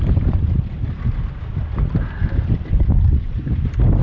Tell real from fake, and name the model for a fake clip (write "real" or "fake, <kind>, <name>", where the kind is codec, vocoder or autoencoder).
real